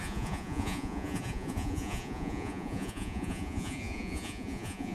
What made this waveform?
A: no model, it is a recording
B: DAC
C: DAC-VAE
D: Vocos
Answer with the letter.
D